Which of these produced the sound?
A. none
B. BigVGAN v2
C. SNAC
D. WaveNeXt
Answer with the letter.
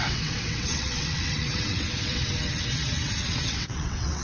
D